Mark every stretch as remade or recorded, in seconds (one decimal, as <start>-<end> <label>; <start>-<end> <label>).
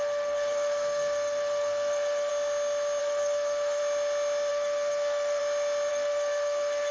0.0-2.3 remade; 2.3-3.0 recorded; 3.0-3.8 remade; 3.8-4.5 recorded; 4.5-5.4 remade; 5.4-5.9 recorded; 5.9-6.9 remade